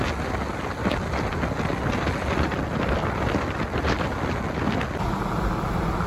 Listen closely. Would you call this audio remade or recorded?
recorded